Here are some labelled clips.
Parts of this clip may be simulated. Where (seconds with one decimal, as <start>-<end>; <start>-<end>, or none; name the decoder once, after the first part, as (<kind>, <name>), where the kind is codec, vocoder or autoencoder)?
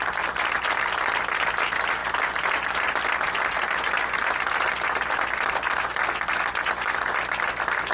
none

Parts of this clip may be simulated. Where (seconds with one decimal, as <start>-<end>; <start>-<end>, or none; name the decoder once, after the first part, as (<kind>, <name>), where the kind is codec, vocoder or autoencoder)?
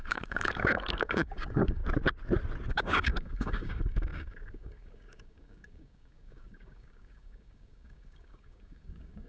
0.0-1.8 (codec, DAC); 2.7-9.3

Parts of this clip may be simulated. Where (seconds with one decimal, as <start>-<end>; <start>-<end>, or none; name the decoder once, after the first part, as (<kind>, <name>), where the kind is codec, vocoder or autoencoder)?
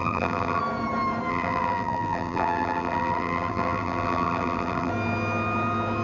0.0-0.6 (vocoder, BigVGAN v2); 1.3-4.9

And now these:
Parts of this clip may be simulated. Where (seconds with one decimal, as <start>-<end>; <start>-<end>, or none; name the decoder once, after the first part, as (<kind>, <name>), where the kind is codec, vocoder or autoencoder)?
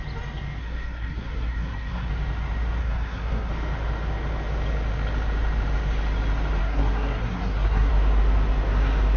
0.6-2.1 (codec, SNAC); 2.8-3.5; 6.6-7.9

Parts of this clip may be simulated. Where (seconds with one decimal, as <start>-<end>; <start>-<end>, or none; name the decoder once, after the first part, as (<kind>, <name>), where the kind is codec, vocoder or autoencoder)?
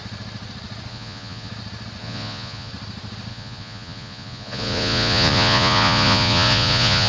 0.9-1.5 (vocoder, Vocos); 2.0-2.7; 3.3-7.1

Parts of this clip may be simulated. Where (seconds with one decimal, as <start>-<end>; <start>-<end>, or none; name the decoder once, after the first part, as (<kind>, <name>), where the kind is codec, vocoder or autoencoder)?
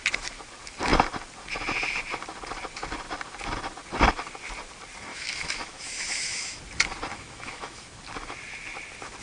5.1-6.6 (autoencoder, DAC-VAE); 7.1-7.8